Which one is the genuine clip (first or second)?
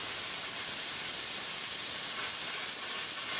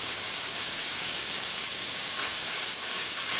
first